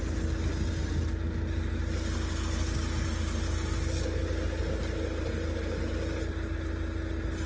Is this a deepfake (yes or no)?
no